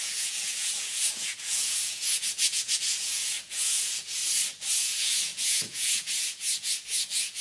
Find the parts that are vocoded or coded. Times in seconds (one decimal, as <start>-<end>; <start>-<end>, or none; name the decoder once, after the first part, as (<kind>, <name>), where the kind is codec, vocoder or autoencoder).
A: 0.0-4.2 (vocoder, Vocos); 4.7-7.4